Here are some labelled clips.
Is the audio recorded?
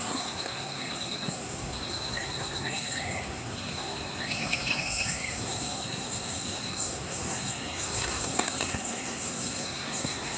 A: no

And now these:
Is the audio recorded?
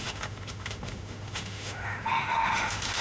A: no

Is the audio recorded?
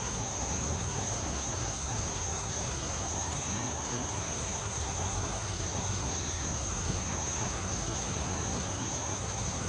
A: no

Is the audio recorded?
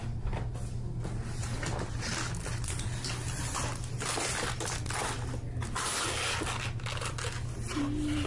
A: yes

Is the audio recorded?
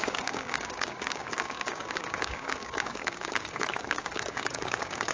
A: no